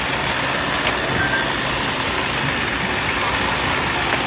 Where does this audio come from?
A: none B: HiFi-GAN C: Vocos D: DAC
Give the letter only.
A